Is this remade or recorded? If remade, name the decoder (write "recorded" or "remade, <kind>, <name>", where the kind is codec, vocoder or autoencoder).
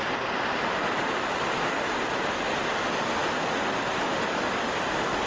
recorded